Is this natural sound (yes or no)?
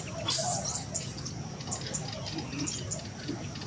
yes